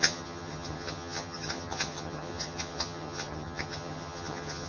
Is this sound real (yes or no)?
no